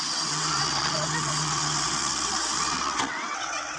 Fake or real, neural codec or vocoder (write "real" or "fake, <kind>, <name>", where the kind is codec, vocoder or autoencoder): fake, vocoder, WaveNeXt